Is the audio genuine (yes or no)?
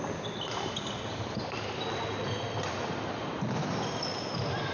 yes